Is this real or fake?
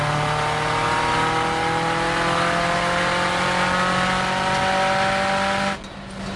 real